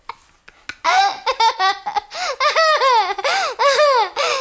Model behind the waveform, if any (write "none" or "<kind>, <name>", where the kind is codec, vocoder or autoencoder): none